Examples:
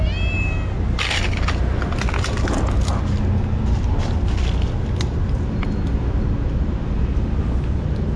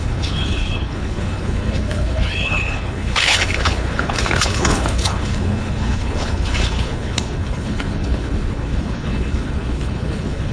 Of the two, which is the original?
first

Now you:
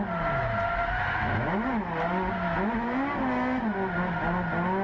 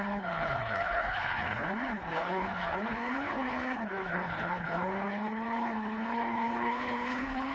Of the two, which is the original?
first